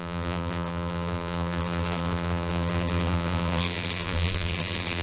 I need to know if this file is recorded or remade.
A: remade